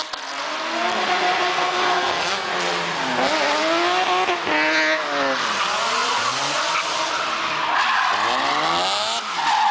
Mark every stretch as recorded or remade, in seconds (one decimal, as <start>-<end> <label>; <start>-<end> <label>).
0.0-1.5 recorded; 1.5-2.5 remade; 2.5-9.7 recorded